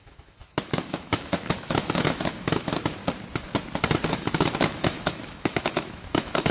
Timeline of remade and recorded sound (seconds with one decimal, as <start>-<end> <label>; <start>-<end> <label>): 0.0-3.0 remade; 3.0-4.1 recorded; 4.1-6.5 remade